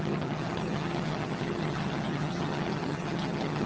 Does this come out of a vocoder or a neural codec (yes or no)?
yes